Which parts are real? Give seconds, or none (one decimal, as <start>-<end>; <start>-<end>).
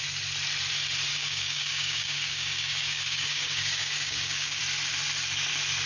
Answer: 0.0-1.1; 4.6-5.9